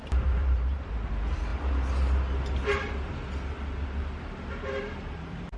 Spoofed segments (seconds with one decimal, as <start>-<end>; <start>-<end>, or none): 0.0-1.5; 4.5-5.6